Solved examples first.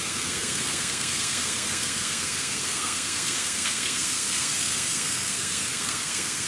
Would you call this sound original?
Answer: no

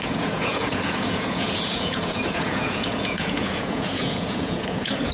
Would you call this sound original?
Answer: no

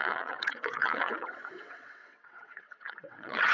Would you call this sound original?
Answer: no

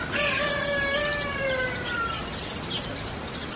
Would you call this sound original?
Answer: yes